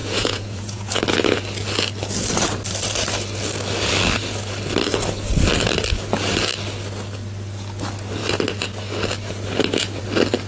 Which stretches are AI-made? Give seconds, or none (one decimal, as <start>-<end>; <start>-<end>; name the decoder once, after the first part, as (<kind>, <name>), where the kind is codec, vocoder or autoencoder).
0.0-1.0 (vocoder, Vocos)